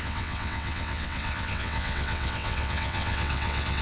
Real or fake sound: fake